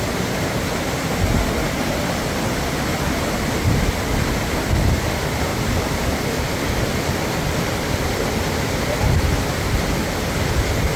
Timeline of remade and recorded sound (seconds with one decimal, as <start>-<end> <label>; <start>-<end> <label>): 0.0-5.5 recorded; 5.5-9.0 remade; 9.0-11.0 recorded